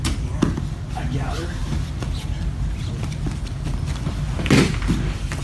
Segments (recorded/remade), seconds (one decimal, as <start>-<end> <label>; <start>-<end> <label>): 0.0-5.4 recorded